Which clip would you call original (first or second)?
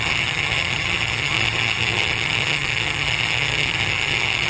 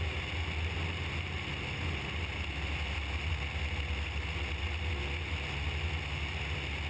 second